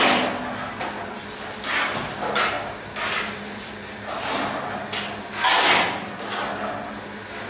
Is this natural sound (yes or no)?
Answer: yes